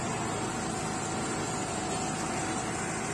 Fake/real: real